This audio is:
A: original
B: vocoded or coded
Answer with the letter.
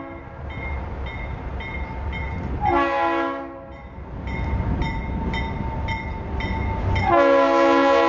A